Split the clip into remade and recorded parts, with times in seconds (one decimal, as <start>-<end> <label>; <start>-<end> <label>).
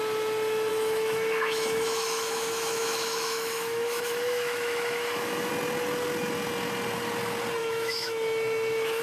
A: 0.0-0.7 recorded; 0.7-5.5 remade; 5.5-7.6 recorded; 7.6-9.0 remade